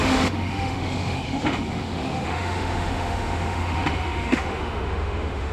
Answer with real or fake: fake